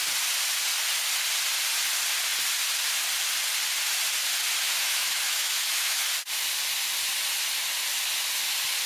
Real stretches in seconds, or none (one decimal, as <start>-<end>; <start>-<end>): 0.0-4.8; 6.0-8.9

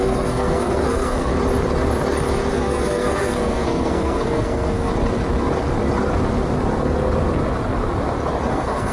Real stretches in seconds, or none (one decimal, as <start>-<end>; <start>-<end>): 1.3-2.5; 4.9-8.5